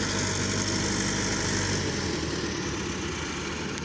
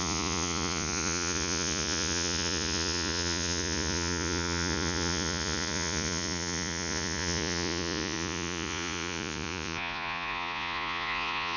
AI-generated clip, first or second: second